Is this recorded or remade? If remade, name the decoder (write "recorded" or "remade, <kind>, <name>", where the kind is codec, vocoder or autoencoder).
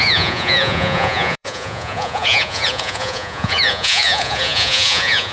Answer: remade, vocoder, Vocos